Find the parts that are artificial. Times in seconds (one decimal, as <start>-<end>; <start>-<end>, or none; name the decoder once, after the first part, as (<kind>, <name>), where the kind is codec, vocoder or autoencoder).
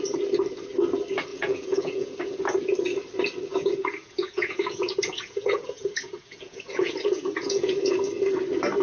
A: 1.3-2.4 (vocoder, Vocos); 3.5-7.7